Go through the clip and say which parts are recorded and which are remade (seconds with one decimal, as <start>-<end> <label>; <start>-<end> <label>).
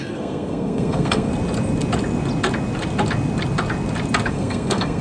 0.0-1.3 remade; 1.3-4.3 recorded; 4.3-5.0 remade